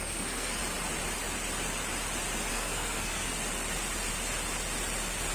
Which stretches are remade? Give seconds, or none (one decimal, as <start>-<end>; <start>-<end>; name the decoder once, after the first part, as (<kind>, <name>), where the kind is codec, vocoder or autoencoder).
0.0-0.6 (codec, SNAC); 2.5-3.3